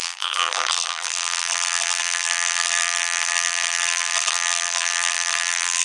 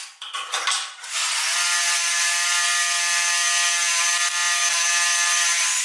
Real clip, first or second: second